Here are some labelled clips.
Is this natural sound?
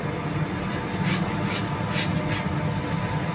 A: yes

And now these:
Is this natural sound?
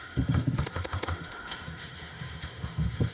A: no